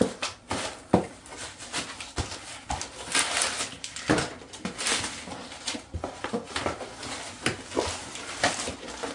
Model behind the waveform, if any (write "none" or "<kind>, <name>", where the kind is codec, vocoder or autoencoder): none